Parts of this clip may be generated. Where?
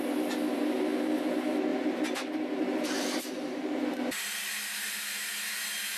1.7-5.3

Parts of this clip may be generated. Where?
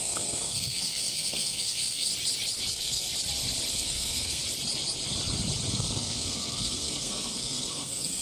0.0-2.1; 2.7-3.1; 3.7-4.4; 5.7-8.2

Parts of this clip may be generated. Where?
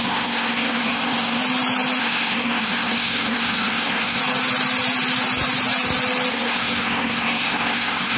0.0-1.4; 2.0-4.2; 6.3-8.2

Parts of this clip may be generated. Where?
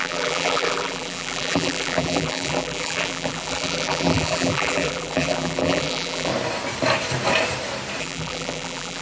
0.0-6.3; 8.0-9.0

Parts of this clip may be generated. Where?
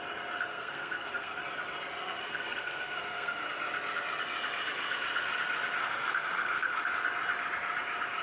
0.5-1.4; 2.0-3.4; 5.8-6.9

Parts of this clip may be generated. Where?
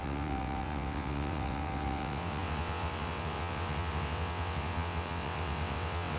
0.0-6.2